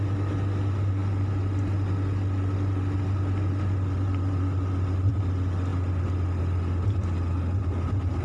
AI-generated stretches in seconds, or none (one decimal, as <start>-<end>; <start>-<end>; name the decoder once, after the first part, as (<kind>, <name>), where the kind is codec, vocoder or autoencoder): none